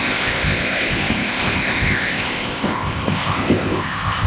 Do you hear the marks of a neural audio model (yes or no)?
yes